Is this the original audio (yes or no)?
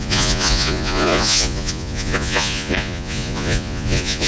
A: no